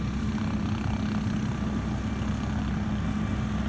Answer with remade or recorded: recorded